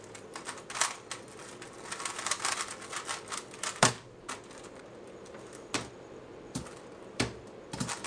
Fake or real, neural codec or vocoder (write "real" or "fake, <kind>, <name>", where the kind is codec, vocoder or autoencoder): real